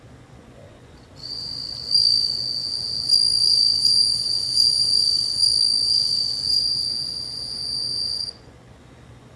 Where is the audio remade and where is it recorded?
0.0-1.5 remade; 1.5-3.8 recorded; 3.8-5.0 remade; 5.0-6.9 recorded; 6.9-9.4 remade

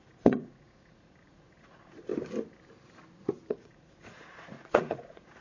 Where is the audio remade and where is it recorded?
0.0-2.1 remade; 2.1-3.5 recorded; 3.5-5.4 remade

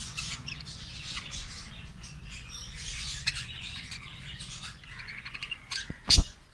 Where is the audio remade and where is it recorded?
0.0-6.5 remade

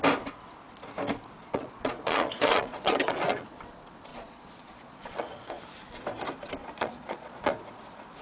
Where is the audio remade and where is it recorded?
0.0-1.4 recorded; 1.4-3.6 remade; 3.6-4.1 recorded; 4.1-5.6 remade; 5.6-6.6 recorded; 6.6-7.5 remade; 7.5-8.2 recorded